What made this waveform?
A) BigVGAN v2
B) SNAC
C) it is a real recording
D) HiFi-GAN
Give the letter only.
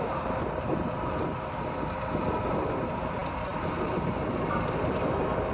A